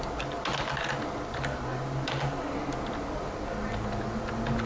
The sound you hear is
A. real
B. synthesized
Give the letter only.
A